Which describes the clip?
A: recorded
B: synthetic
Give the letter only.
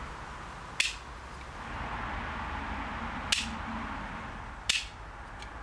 A